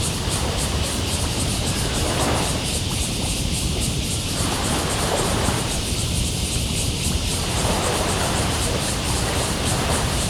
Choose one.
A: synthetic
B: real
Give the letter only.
A